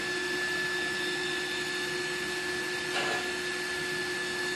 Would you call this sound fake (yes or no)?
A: no